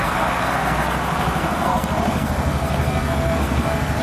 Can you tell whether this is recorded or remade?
remade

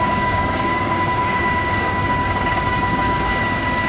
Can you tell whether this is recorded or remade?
remade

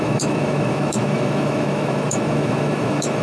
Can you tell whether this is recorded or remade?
remade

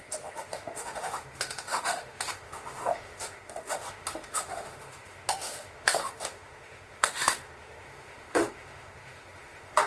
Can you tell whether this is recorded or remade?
remade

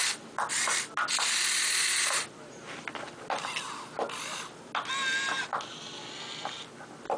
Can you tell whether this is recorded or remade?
recorded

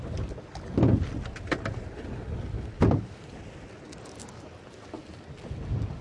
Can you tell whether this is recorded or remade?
recorded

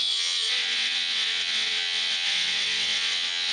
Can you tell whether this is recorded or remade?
remade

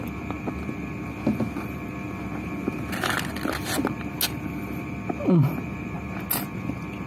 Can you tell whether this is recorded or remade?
recorded